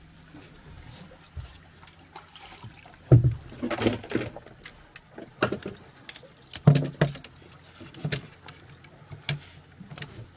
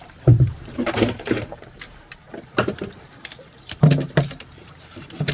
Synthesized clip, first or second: second